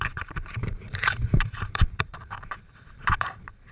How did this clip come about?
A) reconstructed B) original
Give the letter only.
A